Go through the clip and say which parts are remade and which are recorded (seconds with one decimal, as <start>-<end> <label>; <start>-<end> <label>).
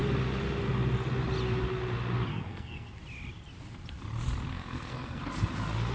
0.0-2.3 recorded; 2.3-2.9 remade; 2.9-4.5 recorded; 4.5-5.2 remade; 5.2-5.9 recorded